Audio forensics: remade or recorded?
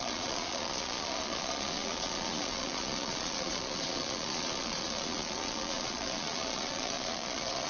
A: remade